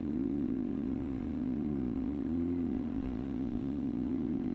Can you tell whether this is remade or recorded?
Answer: remade